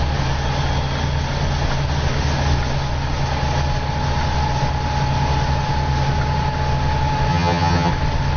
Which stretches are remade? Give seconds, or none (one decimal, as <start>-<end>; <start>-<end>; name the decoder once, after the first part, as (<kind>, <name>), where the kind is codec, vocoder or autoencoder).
7.3-7.9 (vocoder, HiFi-GAN)